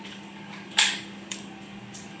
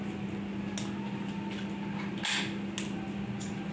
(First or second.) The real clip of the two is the second